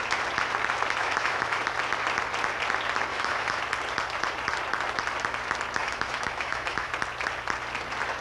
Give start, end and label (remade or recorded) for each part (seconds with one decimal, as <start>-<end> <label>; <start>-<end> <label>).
0.0-1.0 recorded; 1.0-1.6 remade; 1.6-3.1 recorded; 3.1-3.6 remade; 3.6-5.8 recorded; 5.8-6.9 remade; 6.9-8.2 recorded